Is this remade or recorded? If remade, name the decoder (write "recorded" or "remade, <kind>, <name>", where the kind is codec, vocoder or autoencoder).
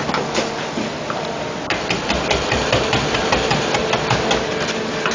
recorded